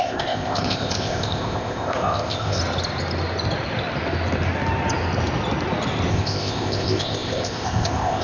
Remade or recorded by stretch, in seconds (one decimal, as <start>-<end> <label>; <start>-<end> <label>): 0.0-2.6 remade; 2.6-6.1 recorded; 6.1-8.2 remade